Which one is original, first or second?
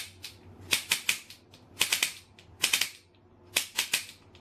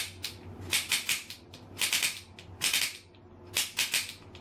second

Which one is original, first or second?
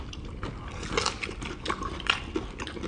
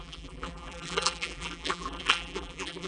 first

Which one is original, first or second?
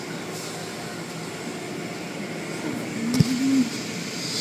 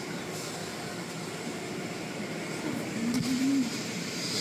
first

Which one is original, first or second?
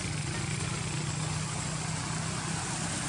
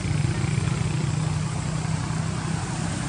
first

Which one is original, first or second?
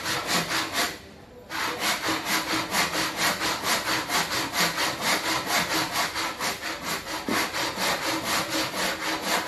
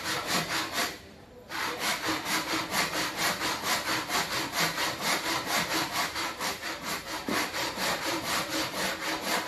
first